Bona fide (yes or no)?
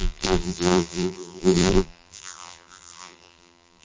no